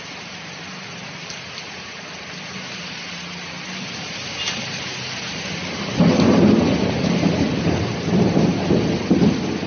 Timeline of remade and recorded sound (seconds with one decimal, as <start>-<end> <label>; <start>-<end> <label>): 0.0-1.0 recorded; 1.0-3.1 remade; 3.1-7.9 recorded; 7.9-8.5 remade; 8.5-9.7 recorded